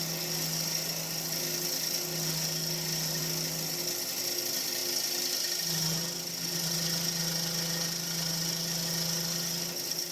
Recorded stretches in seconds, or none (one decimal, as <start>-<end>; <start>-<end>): 0.0-10.1